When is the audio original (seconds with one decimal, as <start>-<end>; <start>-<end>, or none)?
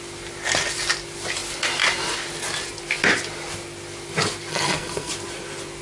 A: 0.0-4.5; 5.1-5.8